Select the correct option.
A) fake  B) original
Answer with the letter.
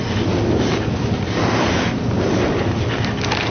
B